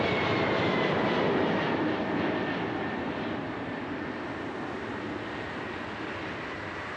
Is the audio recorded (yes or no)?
yes